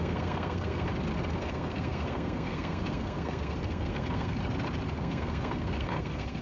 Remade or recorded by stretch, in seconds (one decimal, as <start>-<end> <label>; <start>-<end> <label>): 0.0-0.9 remade; 0.9-1.4 recorded; 1.4-4.4 remade; 4.4-5.0 recorded; 5.0-6.4 remade